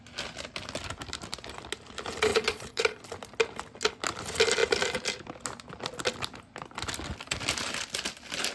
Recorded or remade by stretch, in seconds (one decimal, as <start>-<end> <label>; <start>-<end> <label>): 0.0-2.3 recorded; 2.3-3.0 remade; 3.0-8.5 recorded

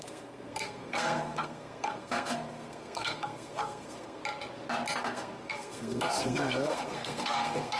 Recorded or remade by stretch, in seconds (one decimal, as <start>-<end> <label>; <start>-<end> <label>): 0.0-4.2 remade; 4.2-5.0 recorded; 5.0-7.8 remade

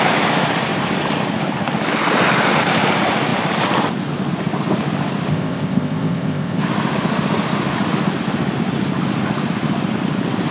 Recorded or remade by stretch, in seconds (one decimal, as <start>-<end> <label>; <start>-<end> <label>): 0.0-5.3 recorded; 5.3-6.6 remade; 6.6-10.5 recorded

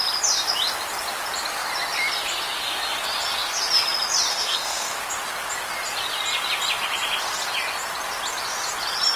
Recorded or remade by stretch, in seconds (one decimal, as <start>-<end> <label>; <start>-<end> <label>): 0.0-4.3 recorded; 4.3-5.0 remade; 5.0-9.2 recorded

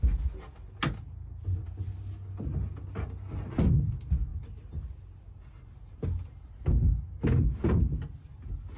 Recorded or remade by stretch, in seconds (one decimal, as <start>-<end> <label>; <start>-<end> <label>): 0.0-8.8 recorded

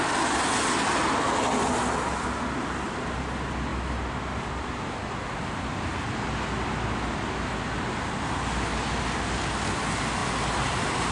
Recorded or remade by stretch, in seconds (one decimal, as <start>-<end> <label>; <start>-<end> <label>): 0.0-11.1 recorded

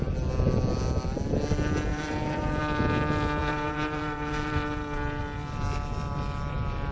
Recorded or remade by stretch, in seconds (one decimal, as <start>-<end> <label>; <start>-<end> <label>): 0.0-1.9 recorded; 1.9-2.6 remade; 2.6-3.4 recorded; 3.4-5.2 remade; 5.2-6.9 recorded

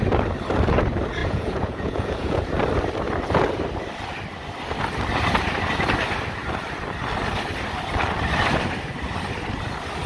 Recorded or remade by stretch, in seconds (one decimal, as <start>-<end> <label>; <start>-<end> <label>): 0.0-1.2 recorded; 1.2-2.4 remade; 2.4-10.1 recorded